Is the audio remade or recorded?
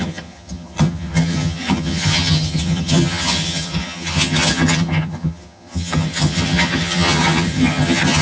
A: remade